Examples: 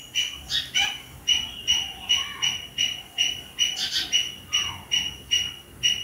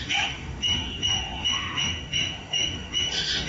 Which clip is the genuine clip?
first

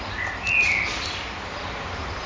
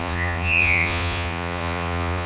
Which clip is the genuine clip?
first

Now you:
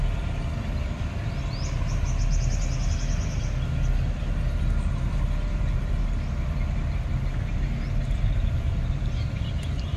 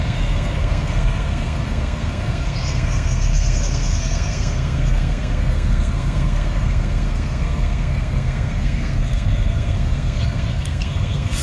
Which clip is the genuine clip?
first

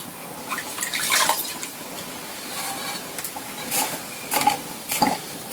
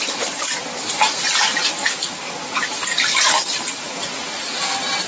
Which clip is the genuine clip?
second